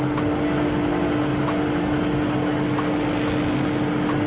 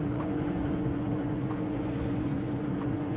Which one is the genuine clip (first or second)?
first